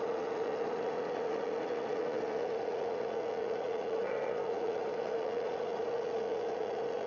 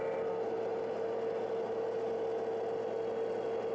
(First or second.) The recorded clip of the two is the second